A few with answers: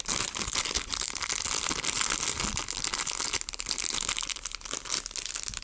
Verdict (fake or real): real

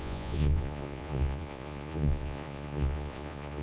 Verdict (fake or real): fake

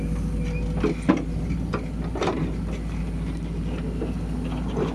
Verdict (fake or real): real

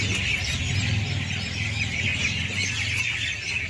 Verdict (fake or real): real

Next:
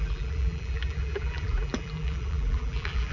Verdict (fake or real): fake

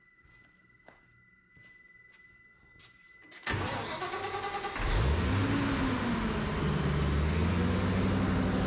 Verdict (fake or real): real